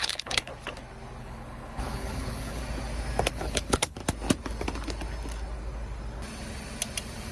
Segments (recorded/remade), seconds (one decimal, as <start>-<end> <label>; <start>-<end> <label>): 0.0-0.5 remade; 0.5-1.2 recorded; 1.2-2.6 remade; 2.6-3.3 recorded; 3.3-4.0 remade; 4.0-7.3 recorded